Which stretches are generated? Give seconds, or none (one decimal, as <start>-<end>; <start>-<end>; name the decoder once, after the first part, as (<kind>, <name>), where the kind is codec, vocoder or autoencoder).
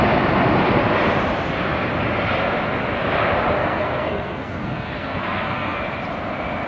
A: 3.6-5.8 (codec, SNAC)